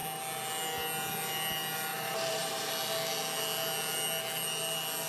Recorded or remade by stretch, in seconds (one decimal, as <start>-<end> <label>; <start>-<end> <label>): 0.0-1.9 recorded; 1.9-2.7 remade; 2.7-5.1 recorded